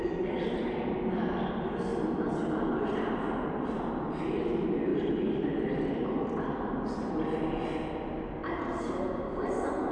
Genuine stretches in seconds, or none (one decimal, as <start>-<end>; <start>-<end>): 0.0-9.9